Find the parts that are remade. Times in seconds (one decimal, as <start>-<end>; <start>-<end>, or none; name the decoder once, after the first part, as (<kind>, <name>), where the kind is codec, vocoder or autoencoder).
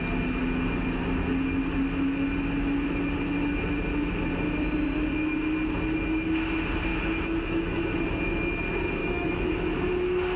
6.9-7.8 (autoencoder, DAC-VAE); 9.0-9.5